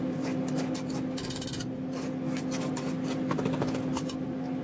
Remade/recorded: recorded